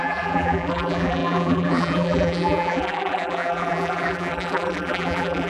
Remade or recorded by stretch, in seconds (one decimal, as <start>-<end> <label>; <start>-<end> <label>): 0.0-5.5 remade